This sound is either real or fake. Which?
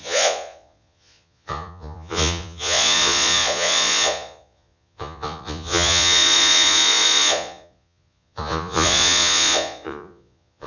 fake